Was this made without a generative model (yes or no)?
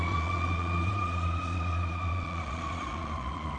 no